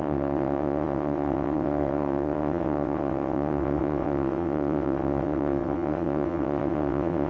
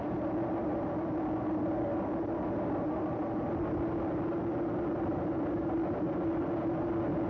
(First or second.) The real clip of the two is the second